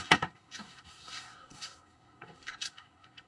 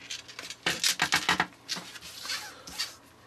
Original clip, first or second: second